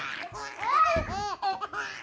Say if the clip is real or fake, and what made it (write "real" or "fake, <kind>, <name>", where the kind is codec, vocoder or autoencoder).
real